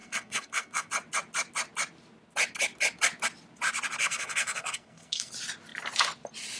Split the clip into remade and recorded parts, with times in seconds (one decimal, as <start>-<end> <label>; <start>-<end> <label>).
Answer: 0.0-0.9 remade; 0.9-4.0 recorded; 4.0-5.3 remade; 5.3-6.6 recorded